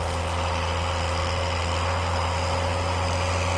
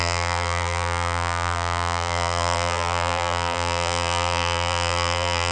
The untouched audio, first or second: first